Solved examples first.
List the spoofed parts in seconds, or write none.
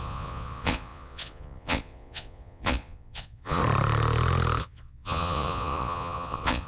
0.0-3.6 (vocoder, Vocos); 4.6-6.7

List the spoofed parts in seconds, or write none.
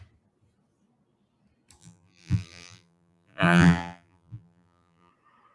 1.8-5.1 (vocoder, BigVGAN v2)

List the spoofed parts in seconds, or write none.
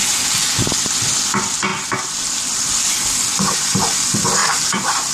4.4-5.1 (vocoder, BigVGAN v2)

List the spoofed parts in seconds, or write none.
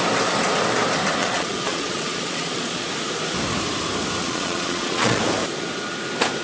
1.2-2.9 (vocoder, Vocos); 4.2-5.2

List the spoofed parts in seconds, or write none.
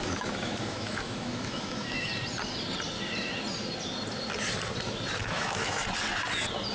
0.0-2.1 (autoencoder, DAC-VAE); 5.2-5.8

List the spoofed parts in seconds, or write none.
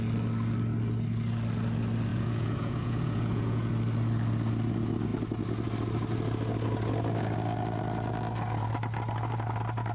2.1-3.7 (vocoder, Vocos)